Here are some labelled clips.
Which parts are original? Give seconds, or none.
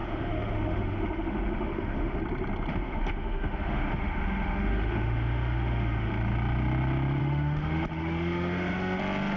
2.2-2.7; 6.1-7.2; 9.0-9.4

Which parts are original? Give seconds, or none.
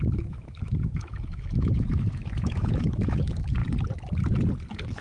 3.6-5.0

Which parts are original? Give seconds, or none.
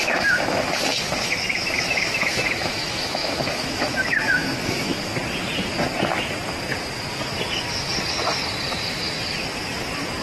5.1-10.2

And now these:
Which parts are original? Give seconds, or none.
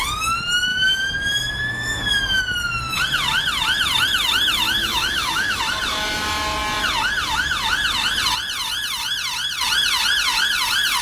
0.0-0.7; 2.4-4.8; 5.6-11.0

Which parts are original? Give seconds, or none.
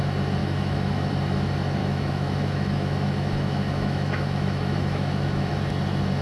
0.0-0.4; 1.1-1.8; 5.5-6.2